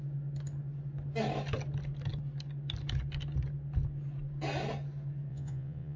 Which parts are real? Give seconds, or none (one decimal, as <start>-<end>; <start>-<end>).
0.0-5.3